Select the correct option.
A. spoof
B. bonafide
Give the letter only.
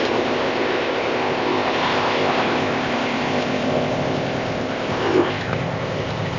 A